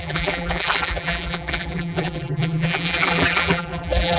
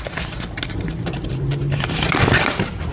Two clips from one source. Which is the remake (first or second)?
first